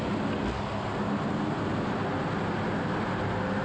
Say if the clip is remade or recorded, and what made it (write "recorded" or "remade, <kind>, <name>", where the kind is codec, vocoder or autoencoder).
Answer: recorded